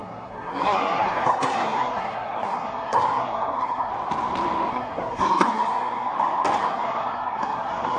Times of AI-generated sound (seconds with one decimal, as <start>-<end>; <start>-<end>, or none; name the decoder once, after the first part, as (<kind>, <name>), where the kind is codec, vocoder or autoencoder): 0.0-3.9 (codec, SNAC); 4.7-6.1; 6.6-8.0